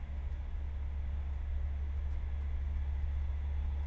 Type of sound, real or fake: real